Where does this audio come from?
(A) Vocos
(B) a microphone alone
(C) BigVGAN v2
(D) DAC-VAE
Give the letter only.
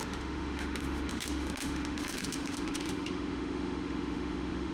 D